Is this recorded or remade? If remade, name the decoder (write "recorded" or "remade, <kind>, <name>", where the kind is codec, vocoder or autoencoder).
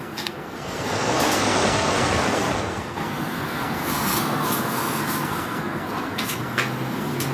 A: remade, codec, SNAC